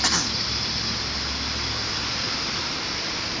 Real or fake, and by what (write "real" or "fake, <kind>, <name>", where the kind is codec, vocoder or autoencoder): real